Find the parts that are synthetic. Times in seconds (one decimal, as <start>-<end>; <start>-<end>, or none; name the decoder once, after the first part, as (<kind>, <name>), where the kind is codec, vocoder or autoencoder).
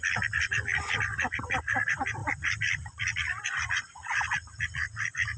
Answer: none